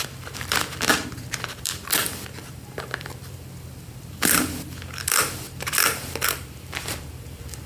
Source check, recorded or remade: remade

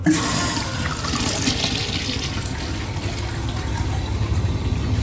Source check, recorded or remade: recorded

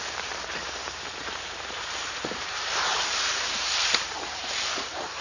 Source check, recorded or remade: remade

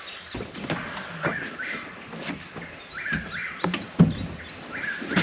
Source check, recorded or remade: recorded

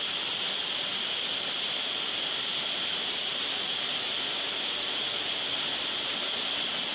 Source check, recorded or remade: recorded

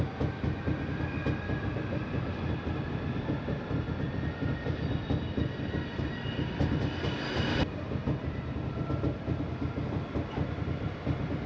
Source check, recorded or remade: recorded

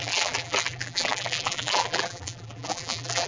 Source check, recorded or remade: remade